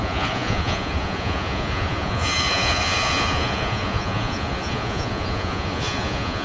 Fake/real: fake